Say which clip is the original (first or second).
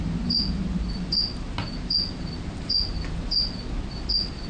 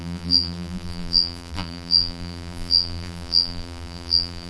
first